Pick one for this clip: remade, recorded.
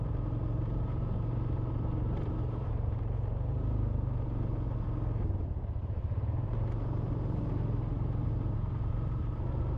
remade